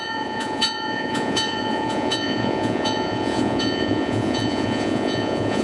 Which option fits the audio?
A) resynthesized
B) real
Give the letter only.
A